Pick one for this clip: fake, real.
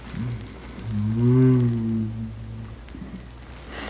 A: real